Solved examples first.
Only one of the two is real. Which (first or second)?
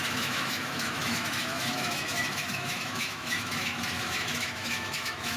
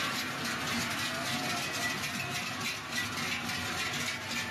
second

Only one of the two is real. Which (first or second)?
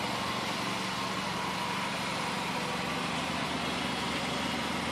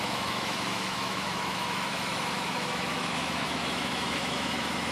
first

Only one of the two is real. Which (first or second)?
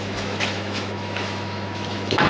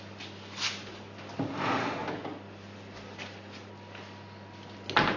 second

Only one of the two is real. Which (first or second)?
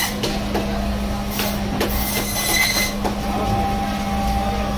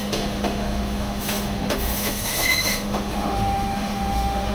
first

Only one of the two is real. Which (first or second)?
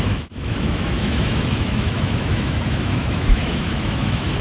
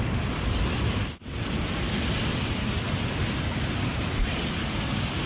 second